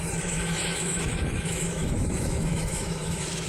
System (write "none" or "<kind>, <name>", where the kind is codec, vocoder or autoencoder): autoencoder, DAC-VAE